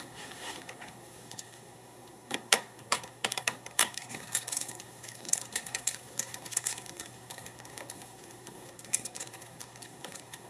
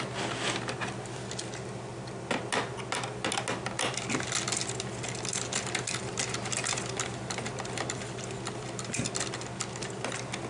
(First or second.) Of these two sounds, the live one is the second